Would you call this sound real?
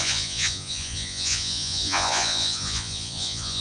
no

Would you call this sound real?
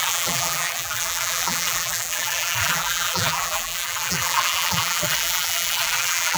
no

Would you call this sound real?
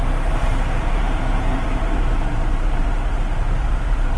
no